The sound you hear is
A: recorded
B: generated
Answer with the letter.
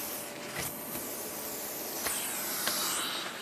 A